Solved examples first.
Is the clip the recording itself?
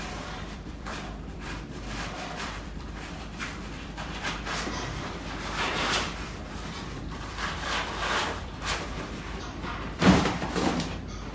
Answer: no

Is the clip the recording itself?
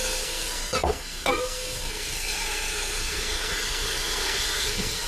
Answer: no